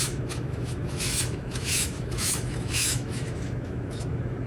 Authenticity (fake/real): fake